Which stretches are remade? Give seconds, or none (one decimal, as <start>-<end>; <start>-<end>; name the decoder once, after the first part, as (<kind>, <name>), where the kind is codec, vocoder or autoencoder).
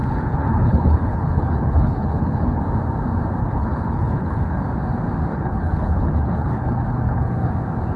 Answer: 0.0-2.6 (codec, HILCodec); 3.4-4.6; 5.3-7.5